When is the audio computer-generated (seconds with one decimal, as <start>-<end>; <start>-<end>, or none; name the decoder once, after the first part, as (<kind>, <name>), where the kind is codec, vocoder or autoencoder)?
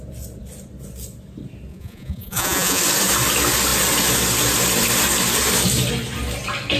1.7-2.8 (vocoder, Vocos)